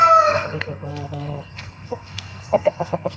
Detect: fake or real fake